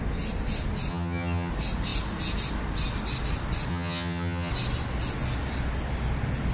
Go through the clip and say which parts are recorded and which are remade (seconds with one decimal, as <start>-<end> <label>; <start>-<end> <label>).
0.0-0.9 recorded; 0.9-1.5 remade; 1.5-3.7 recorded; 3.7-4.5 remade; 4.5-6.5 recorded